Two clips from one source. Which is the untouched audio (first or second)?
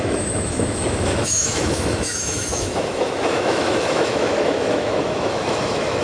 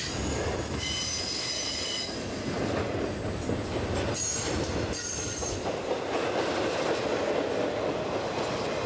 second